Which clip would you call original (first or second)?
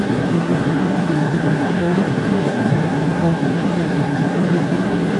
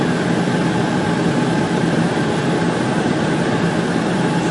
second